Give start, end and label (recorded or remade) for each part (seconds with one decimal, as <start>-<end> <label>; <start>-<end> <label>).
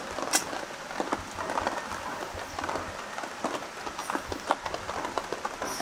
0.0-5.8 recorded